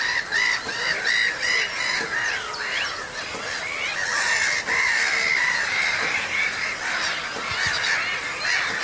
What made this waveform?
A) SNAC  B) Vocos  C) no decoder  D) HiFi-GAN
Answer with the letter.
C